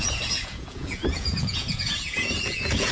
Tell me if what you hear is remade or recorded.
remade